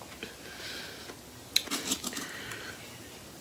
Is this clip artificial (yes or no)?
no